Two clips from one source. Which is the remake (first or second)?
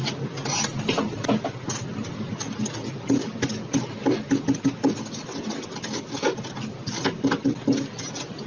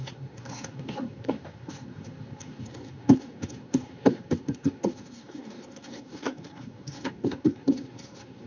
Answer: second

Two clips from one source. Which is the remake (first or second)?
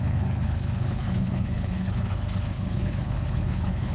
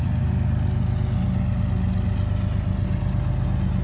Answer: first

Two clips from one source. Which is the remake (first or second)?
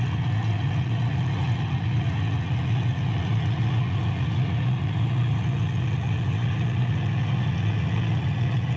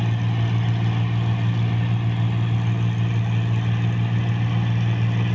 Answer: first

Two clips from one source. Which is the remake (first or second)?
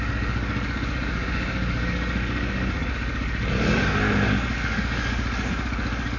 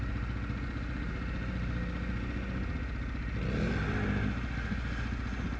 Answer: first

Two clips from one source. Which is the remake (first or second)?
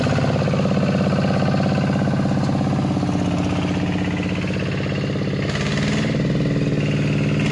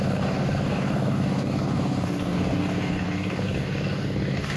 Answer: second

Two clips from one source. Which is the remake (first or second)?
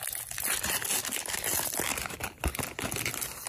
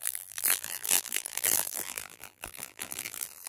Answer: second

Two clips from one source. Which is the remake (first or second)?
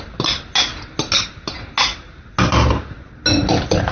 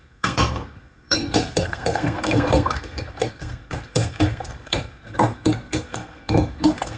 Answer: second